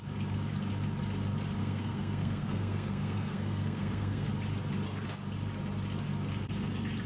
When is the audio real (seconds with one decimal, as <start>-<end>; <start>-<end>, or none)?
0.0-1.6; 4.3-7.1